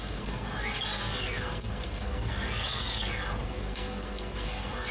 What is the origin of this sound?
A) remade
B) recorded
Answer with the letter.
A